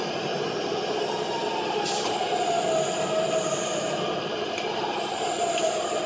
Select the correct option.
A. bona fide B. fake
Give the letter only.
A